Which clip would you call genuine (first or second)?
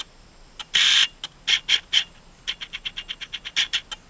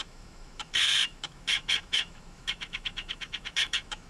first